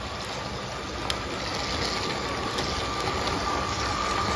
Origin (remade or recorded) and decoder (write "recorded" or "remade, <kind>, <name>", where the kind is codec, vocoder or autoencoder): recorded